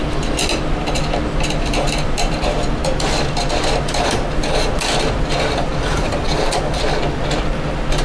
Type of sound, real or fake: fake